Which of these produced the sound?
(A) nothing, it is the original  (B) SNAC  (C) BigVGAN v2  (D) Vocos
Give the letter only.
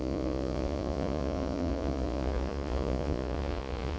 D